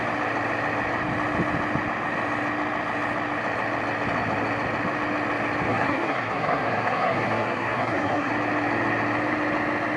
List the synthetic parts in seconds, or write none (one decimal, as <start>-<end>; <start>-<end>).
5.7-8.3

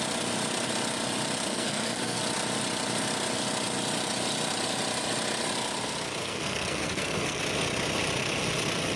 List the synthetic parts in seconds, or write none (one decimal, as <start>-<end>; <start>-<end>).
1.5-2.2; 6.2-7.4

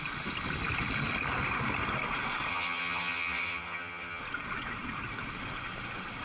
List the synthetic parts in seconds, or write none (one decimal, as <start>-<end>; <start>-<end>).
2.5-4.2

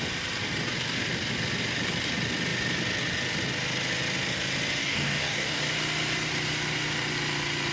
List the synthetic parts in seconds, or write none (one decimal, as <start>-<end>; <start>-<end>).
4.8-5.6

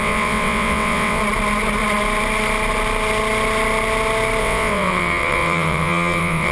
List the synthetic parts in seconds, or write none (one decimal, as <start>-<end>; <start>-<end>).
0.0-1.2; 4.4-6.5

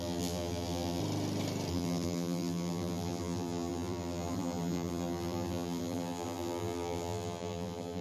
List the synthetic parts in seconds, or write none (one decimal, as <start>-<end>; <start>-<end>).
0.0-1.0; 1.7-8.0

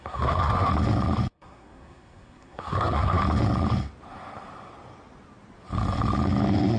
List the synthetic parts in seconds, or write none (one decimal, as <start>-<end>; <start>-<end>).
0.0-0.7; 1.3-3.2